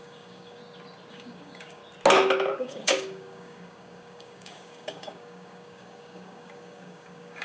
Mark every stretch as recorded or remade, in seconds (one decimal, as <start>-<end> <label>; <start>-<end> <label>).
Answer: 0.0-0.6 remade; 0.6-1.1 recorded; 1.1-1.8 remade; 1.8-2.6 recorded; 2.6-7.4 remade